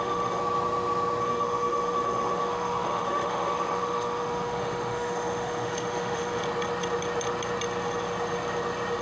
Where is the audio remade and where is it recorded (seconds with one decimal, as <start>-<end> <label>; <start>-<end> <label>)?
0.0-0.4 remade; 0.4-1.2 recorded; 1.2-6.4 remade; 6.4-9.0 recorded

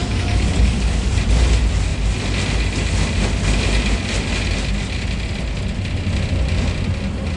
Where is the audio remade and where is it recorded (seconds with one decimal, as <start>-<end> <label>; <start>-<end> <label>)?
0.0-1.1 remade; 1.1-7.4 recorded

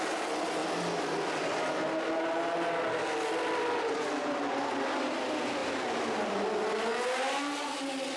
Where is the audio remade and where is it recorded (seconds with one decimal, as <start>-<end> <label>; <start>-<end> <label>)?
0.0-5.6 recorded; 5.6-6.3 remade; 6.3-8.2 recorded

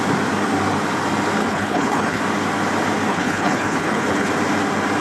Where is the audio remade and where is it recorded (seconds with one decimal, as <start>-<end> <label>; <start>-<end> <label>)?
0.0-1.4 recorded; 1.4-2.2 remade; 2.2-3.1 recorded; 3.1-4.3 remade; 4.3-5.0 recorded

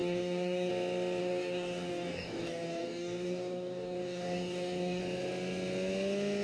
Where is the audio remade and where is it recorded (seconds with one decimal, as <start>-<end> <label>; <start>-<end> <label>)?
0.0-0.7 remade; 0.7-1.2 recorded; 1.2-5.0 remade; 5.0-6.4 recorded

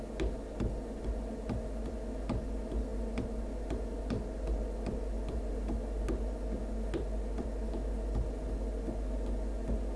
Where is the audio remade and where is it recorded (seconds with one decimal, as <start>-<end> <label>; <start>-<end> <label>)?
0.0-2.9 recorded; 2.9-5.5 remade; 5.5-10.0 recorded

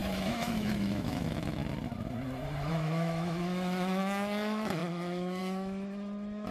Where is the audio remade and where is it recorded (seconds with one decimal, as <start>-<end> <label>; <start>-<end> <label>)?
0.0-1.6 remade; 1.6-2.7 recorded; 2.7-6.5 remade

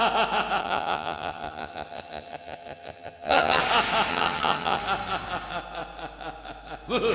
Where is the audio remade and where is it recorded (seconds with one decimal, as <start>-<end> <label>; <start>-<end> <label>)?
0.0-0.6 recorded; 0.6-3.6 remade; 3.6-4.1 recorded; 4.1-4.8 remade; 4.8-7.1 recorded